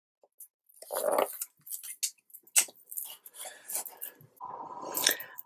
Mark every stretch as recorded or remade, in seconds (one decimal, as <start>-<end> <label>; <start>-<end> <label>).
0.0-5.5 recorded

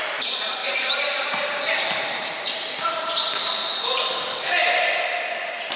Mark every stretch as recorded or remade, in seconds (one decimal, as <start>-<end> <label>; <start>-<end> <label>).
0.0-0.6 recorded; 0.6-4.1 remade; 4.1-5.8 recorded

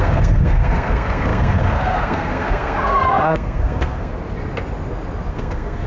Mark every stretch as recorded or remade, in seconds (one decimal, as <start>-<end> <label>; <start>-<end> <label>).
0.0-4.1 remade; 4.1-5.3 recorded; 5.3-5.9 remade

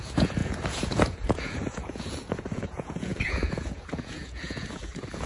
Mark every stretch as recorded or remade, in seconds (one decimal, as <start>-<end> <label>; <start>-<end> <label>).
0.0-5.3 remade

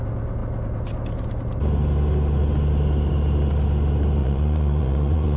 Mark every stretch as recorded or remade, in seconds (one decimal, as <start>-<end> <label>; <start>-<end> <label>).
0.0-4.2 recorded; 4.2-5.4 remade

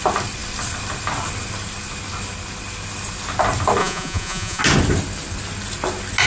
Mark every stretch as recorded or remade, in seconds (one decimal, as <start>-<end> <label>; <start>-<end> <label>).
0.0-3.8 recorded; 3.8-4.6 remade; 4.6-6.3 recorded